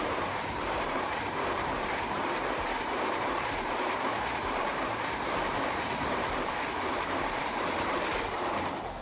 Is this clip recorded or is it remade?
remade